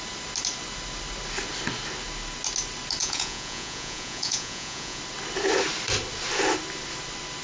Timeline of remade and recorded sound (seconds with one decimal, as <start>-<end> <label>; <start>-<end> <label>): 0.0-3.0 recorded; 3.0-5.0 remade; 5.0-7.4 recorded